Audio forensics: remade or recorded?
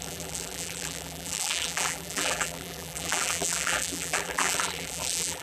remade